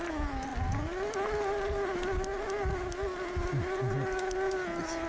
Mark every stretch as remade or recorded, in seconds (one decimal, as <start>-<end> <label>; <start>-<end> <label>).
0.0-5.1 recorded